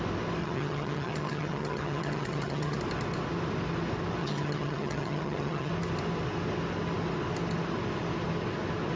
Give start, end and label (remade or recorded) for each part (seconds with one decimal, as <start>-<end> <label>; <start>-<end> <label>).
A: 0.0-0.4 recorded; 0.4-2.8 remade; 2.8-4.2 recorded; 4.2-5.7 remade; 5.7-9.0 recorded